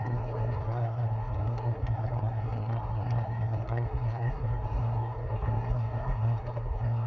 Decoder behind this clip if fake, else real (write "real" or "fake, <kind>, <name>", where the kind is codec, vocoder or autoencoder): fake, codec, SNAC